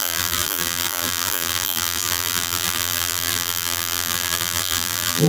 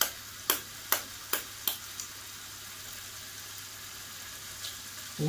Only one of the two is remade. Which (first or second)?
first